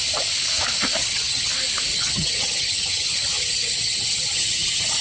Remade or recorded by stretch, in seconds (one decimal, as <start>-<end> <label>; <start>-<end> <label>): 0.0-1.0 recorded; 1.0-1.5 remade; 1.5-1.9 recorded; 1.9-5.0 remade